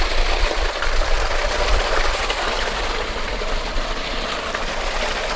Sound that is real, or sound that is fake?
real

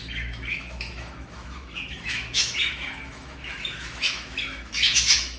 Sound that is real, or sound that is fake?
fake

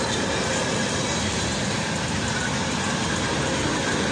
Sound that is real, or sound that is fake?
real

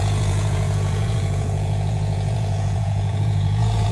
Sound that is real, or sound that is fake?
fake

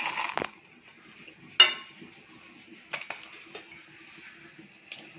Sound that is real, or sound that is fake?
real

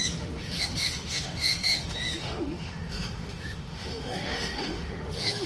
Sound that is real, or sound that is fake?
fake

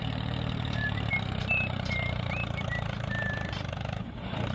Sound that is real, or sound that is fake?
fake